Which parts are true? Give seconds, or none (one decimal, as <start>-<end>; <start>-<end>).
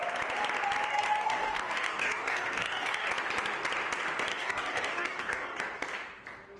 0.0-0.9; 3.1-4.3; 5.6-6.6